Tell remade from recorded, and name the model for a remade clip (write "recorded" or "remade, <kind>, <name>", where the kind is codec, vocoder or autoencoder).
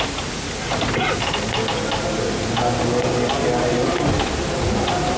recorded